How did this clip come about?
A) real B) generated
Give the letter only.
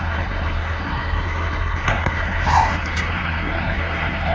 B